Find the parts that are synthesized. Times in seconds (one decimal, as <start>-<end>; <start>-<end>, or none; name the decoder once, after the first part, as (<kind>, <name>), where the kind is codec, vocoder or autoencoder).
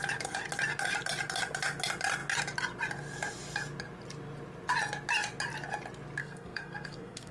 6.2-7.3 (codec, SNAC)